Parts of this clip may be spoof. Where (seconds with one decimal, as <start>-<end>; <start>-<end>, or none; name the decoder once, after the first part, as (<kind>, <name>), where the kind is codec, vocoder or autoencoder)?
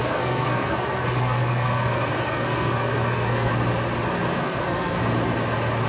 0.0-3.5 (codec, SNAC); 4.3-5.0